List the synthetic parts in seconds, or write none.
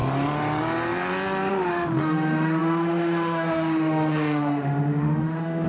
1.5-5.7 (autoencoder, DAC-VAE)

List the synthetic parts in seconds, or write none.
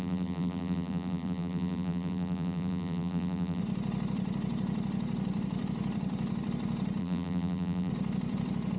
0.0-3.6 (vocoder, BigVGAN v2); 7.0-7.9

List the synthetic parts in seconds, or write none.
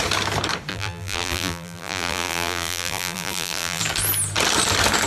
0.7-3.8 (vocoder, BigVGAN v2)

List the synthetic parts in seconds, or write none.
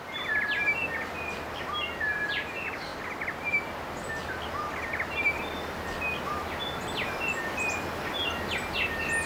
none